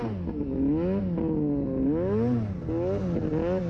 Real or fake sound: real